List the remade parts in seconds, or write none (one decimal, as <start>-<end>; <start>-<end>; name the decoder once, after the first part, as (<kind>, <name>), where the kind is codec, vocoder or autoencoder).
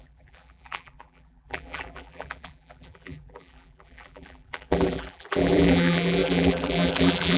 0.0-7.4 (vocoder, BigVGAN v2)